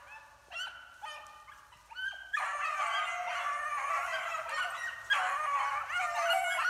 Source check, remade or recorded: recorded